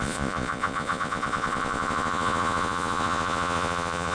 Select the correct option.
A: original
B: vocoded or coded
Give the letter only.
B